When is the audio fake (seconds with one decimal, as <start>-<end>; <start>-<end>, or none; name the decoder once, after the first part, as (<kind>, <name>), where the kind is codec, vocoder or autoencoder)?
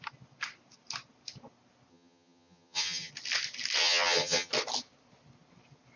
1.9-3.1 (vocoder, HiFi-GAN); 3.8-4.5